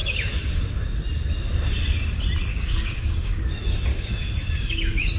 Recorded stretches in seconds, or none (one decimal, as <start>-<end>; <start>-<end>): 0.7-2.5; 3.4-3.9